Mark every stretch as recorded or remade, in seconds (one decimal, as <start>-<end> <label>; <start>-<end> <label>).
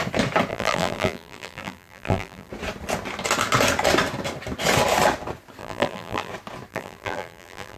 0.0-0.5 recorded; 0.5-2.5 remade; 2.5-5.6 recorded; 5.6-6.3 remade; 6.3-6.7 recorded; 6.7-7.8 remade